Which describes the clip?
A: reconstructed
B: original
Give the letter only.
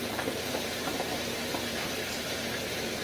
A